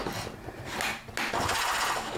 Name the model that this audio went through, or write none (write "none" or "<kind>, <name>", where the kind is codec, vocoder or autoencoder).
none